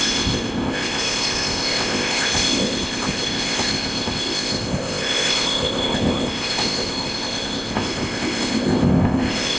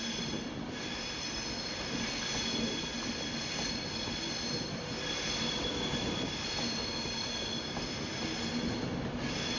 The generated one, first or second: first